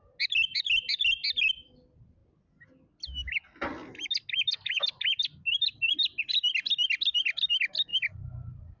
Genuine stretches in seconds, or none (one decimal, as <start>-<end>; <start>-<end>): 0.0-7.9